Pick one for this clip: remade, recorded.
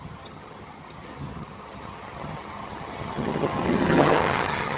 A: remade